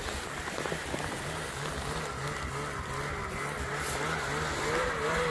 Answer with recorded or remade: recorded